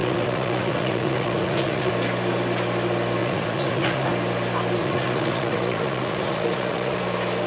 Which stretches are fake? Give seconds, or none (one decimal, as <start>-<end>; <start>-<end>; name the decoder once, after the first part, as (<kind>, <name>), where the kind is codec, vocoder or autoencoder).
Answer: 0.0-1.9 (vocoder, Vocos); 3.2-4.1; 4.8-7.0